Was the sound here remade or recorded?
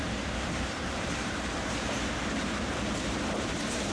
remade